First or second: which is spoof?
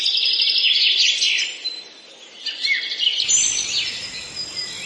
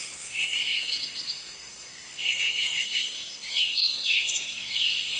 second